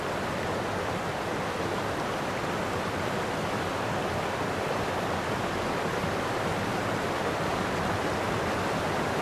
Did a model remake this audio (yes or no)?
no